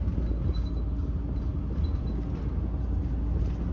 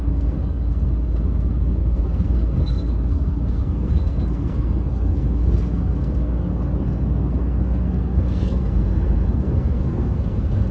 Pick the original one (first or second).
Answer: first